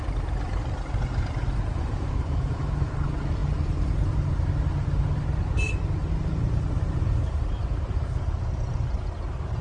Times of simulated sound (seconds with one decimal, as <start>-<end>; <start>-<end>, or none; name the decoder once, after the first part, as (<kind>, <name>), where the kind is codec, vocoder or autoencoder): 1.7-2.9 (autoencoder, DAC-VAE)